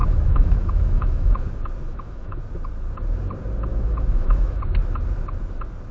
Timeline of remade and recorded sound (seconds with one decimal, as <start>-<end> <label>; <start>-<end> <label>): 0.0-1.4 remade; 1.4-1.9 recorded; 1.9-2.4 remade; 2.4-3.7 recorded; 3.7-4.6 remade; 4.6-5.9 recorded